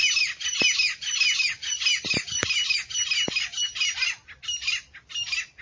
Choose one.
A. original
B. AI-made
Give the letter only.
A